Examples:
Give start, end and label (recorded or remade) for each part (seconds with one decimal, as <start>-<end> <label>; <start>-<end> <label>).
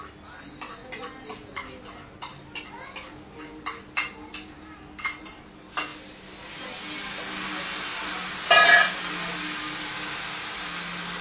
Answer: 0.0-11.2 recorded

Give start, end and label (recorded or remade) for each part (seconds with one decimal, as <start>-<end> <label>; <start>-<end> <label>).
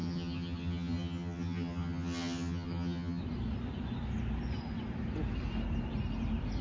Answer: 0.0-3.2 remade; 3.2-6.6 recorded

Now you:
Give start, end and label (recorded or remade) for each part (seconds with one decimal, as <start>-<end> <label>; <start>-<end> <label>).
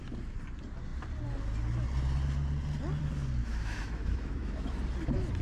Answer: 0.0-3.4 recorded; 3.4-4.7 remade; 4.7-5.4 recorded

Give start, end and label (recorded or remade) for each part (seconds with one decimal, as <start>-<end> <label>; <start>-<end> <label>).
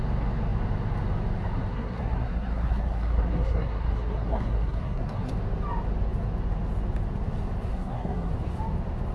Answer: 0.0-1.7 recorded; 1.7-5.3 remade; 5.3-7.7 recorded; 7.7-8.3 remade; 8.3-9.1 recorded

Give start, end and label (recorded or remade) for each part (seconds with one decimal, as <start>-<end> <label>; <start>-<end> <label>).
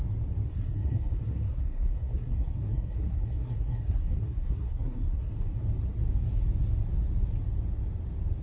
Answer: 0.0-0.5 recorded; 0.5-5.3 remade; 5.3-8.4 recorded